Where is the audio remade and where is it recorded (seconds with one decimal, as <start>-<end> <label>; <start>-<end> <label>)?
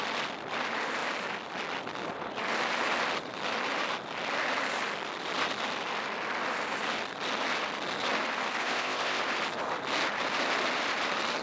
0.0-8.6 recorded; 8.6-9.2 remade; 9.2-11.4 recorded